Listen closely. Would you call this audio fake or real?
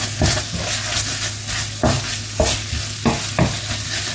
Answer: real